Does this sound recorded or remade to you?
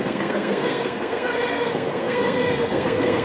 remade